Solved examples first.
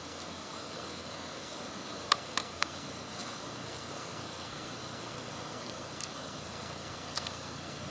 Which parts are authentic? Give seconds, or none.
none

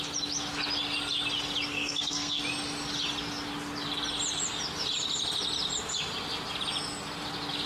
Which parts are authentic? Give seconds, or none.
0.0-1.7; 2.4-7.7

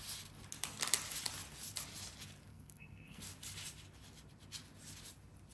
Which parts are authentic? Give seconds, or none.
0.0-2.5; 3.2-5.5

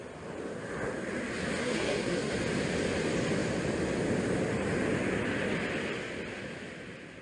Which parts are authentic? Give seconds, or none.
0.0-1.6; 2.3-7.2

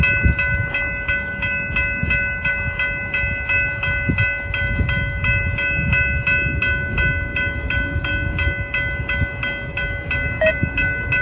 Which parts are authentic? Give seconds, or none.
0.0-11.2